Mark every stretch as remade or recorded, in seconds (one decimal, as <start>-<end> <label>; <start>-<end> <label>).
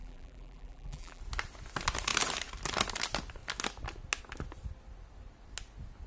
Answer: 0.0-1.2 remade; 1.2-6.1 recorded